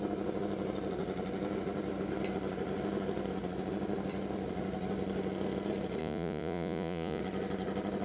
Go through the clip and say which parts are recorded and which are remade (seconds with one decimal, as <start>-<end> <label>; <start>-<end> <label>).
0.0-6.0 recorded; 6.0-7.2 remade; 7.2-8.0 recorded